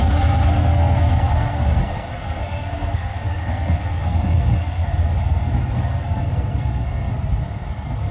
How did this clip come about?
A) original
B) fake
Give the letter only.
B